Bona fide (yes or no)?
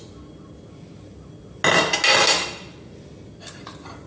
yes